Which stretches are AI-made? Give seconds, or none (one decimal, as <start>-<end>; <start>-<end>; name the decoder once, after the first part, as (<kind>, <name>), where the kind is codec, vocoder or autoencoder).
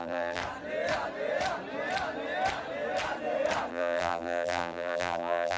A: 0.0-0.4 (vocoder, BigVGAN v2); 3.7-5.6